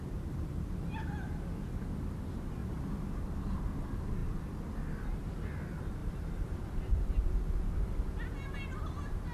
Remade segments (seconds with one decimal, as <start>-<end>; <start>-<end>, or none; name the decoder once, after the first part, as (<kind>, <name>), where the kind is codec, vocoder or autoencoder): 2.6-3.2 (vocoder, BigVGAN v2); 6.0-6.6